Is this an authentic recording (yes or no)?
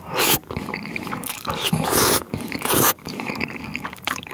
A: no